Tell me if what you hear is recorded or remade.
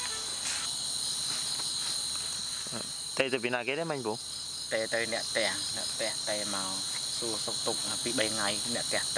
recorded